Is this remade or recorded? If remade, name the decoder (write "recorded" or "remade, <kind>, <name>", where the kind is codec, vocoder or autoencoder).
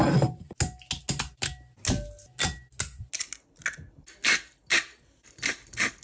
recorded